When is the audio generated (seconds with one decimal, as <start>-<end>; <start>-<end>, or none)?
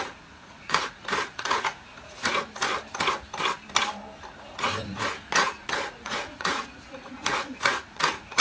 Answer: 0.0-2.7; 4.5-8.4